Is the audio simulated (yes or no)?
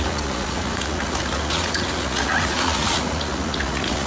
yes